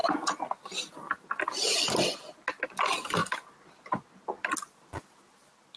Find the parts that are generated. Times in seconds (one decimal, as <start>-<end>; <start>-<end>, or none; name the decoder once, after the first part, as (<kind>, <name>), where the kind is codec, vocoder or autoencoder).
none